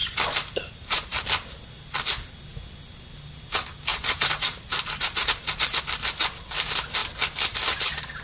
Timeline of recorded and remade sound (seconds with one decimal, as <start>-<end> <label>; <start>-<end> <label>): 0.0-1.5 remade; 1.5-3.9 recorded; 3.9-5.8 remade; 5.8-8.2 recorded